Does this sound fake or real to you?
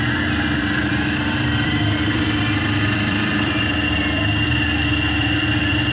fake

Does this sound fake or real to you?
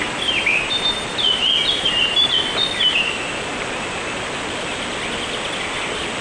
real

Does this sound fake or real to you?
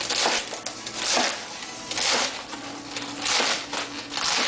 real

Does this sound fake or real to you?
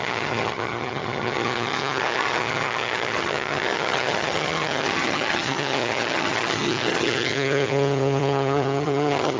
fake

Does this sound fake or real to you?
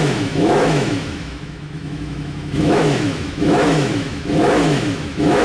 fake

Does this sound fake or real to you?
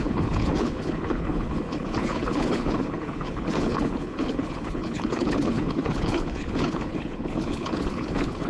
fake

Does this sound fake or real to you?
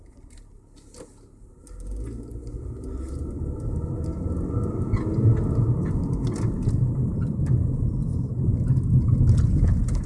real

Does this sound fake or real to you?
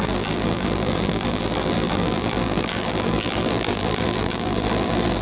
fake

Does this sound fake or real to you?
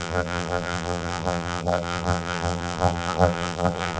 fake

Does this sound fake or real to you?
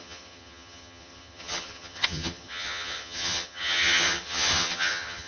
fake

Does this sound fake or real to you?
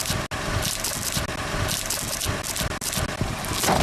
real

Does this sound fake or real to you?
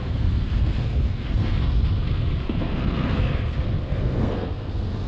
fake